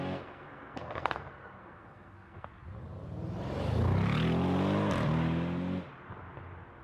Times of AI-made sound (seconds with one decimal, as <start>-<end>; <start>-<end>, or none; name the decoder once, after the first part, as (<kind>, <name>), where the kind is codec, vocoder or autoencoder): 0.0-2.5 (codec, SNAC)

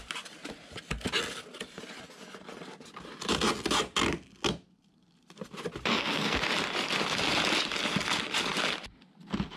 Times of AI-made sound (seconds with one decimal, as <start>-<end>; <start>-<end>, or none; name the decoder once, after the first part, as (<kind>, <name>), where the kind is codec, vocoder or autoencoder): 5.9-6.4 (codec, SNAC)

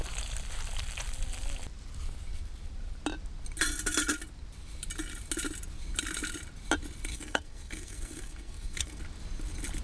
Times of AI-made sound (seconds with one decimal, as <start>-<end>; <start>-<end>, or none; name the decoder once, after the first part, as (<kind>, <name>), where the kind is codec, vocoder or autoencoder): 7.1-9.0 (codec, SNAC)

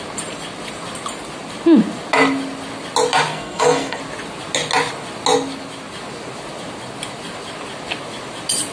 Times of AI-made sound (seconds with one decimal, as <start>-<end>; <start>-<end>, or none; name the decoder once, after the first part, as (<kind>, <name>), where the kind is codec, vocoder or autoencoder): 3.3-4.0 (codec, SNAC)

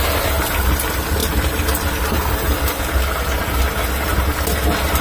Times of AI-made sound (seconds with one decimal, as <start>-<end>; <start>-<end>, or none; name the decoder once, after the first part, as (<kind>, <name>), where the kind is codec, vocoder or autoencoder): none

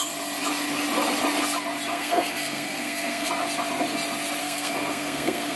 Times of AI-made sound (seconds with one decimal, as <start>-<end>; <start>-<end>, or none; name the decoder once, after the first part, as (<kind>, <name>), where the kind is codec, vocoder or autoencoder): 1.9-3.3 (codec, SNAC); 4.4-5.6